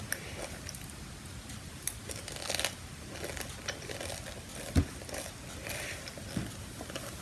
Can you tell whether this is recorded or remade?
recorded